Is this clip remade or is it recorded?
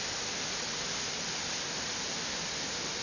recorded